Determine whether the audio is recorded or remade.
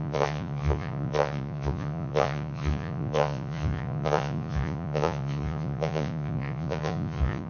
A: remade